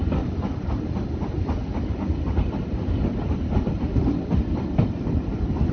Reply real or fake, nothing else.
real